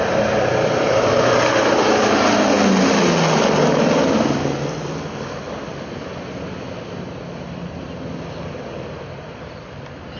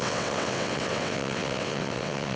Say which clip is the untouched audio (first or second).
first